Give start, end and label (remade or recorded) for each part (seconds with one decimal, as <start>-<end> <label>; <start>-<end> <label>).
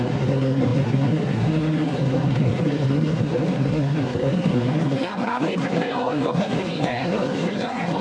0.0-8.0 remade